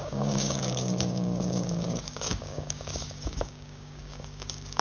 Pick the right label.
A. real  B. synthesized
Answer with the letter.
B